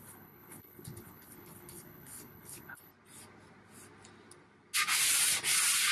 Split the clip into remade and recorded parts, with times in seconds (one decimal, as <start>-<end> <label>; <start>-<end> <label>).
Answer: 0.0-2.9 remade; 2.9-5.9 recorded